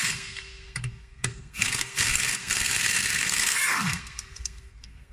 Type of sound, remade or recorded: remade